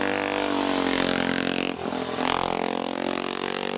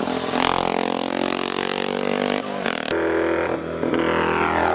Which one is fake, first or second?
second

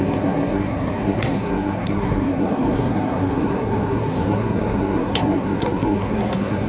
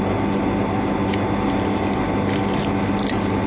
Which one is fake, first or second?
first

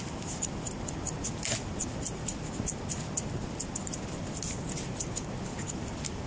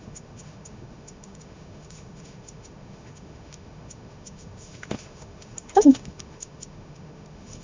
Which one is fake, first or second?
second